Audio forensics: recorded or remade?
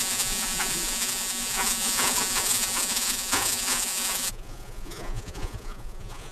remade